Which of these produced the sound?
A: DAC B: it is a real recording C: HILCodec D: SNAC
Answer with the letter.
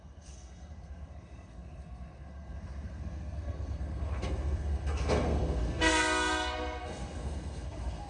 D